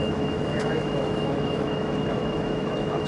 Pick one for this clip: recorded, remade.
remade